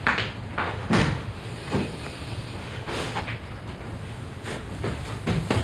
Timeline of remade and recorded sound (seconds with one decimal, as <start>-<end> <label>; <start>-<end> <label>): 0.0-0.6 recorded; 0.6-1.5 remade; 1.5-2.6 recorded; 2.6-3.2 remade; 3.2-4.0 recorded; 4.0-4.7 remade; 4.7-5.6 recorded